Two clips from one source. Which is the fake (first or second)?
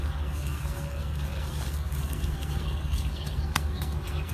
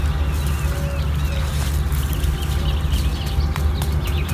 first